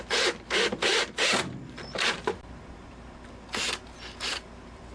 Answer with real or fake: real